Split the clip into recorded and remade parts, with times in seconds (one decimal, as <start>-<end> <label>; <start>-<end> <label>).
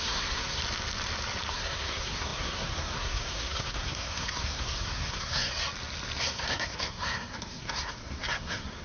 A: 0.0-0.6 remade; 0.6-1.5 recorded; 1.5-5.5 remade; 5.5-6.2 recorded; 6.2-8.8 remade